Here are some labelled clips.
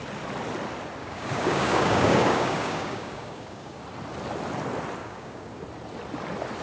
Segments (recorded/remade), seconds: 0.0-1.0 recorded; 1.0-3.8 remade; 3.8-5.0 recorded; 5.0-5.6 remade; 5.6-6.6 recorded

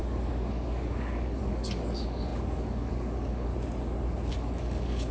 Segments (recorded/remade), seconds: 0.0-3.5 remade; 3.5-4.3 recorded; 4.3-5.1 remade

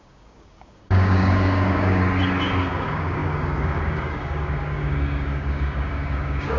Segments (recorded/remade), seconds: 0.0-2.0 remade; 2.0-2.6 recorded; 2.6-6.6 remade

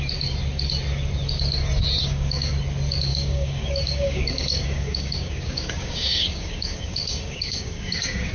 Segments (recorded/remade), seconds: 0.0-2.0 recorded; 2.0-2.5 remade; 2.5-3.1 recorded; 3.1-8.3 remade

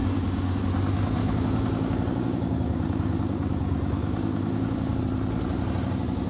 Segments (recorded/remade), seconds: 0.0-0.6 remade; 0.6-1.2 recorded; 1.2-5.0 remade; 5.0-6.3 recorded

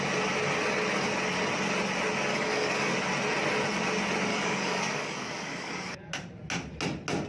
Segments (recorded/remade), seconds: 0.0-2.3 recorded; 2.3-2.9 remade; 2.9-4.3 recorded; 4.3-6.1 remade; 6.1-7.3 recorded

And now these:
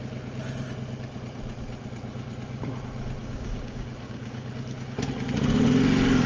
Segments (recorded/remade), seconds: 0.0-3.2 recorded; 3.2-4.5 remade; 4.5-6.3 recorded